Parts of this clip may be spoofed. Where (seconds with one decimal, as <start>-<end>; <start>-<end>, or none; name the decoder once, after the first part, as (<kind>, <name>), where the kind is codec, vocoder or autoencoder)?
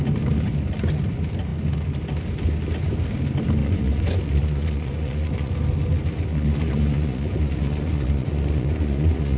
3.6-5.5 (vocoder, Vocos); 6.3-9.4